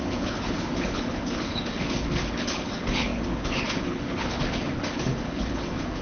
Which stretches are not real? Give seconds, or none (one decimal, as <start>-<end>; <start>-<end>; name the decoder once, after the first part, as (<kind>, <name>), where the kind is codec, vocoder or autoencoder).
0.0-6.0 (codec, HILCodec)